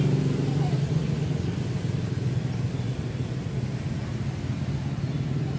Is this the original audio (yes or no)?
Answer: yes